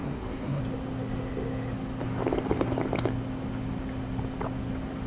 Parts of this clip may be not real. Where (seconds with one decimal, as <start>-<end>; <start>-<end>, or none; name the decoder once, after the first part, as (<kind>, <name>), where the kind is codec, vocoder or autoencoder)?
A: 0.0-0.6 (codec, SNAC)